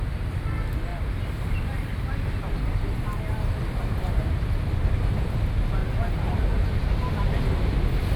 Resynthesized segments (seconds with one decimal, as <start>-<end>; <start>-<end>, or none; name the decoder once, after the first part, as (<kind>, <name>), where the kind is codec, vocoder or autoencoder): 0.9-5.0 (vocoder, BigVGAN v2); 5.8-6.7